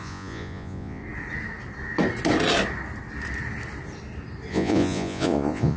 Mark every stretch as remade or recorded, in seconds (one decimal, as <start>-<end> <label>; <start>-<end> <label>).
0.0-1.0 remade; 1.0-4.5 recorded; 4.5-5.8 remade

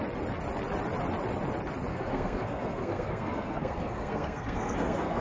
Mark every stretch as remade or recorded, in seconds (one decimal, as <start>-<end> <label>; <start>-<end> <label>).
0.0-1.9 recorded; 1.9-5.2 remade

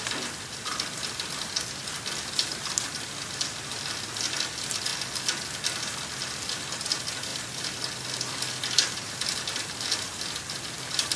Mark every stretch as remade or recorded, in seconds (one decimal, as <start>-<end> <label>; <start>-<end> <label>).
0.0-11.2 recorded

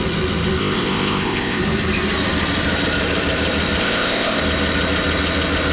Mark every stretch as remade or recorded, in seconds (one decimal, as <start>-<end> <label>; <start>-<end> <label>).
0.0-0.6 recorded; 0.6-1.6 remade; 1.6-3.8 recorded; 3.8-4.4 remade; 4.4-5.7 recorded

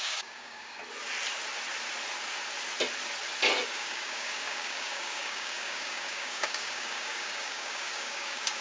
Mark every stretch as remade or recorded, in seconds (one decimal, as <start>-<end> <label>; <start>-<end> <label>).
0.0-0.8 remade; 0.8-3.7 recorded; 3.7-8.6 remade

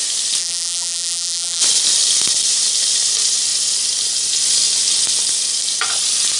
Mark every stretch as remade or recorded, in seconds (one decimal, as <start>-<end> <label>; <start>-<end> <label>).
0.0-0.4 recorded; 0.4-1.6 remade; 1.6-6.4 recorded

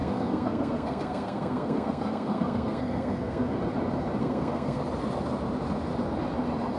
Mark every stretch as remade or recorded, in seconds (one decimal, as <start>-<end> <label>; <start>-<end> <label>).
0.0-3.6 remade; 3.6-4.2 recorded; 4.2-4.8 remade; 4.8-6.8 recorded